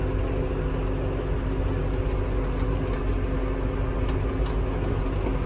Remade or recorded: recorded